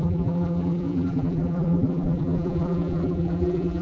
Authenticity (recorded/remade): remade